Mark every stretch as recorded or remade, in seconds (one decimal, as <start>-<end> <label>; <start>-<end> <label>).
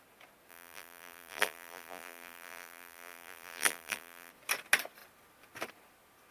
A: 0.0-0.5 recorded; 0.5-4.3 remade; 4.3-6.3 recorded